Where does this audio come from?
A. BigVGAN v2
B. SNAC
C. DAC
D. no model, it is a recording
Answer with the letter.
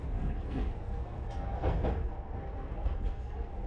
B